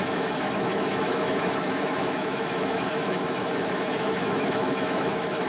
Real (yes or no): no